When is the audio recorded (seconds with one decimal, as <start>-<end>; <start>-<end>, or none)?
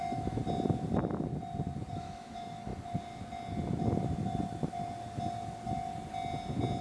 0.4-1.9; 2.7-6.8